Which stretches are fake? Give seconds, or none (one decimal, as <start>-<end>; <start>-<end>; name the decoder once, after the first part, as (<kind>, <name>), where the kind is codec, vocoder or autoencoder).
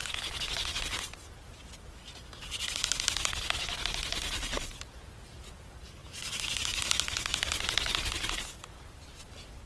none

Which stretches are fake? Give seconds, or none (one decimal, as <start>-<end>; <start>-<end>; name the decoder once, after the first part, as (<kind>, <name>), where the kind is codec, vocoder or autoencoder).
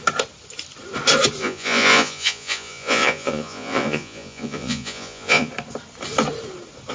1.4-5.5 (vocoder, Vocos)